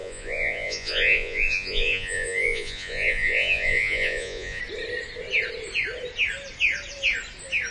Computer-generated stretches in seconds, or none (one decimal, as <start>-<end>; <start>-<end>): 0.0-4.6